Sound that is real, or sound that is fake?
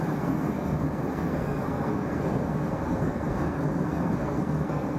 fake